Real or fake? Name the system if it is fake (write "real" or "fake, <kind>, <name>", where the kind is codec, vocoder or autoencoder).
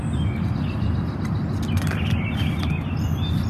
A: real